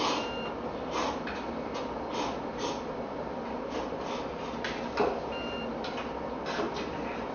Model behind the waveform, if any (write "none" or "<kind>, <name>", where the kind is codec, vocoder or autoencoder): none